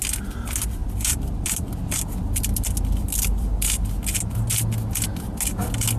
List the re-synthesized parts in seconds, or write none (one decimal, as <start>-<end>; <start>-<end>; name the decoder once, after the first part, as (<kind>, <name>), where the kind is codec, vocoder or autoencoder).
0.8-4.4 (vocoder, BigVGAN v2)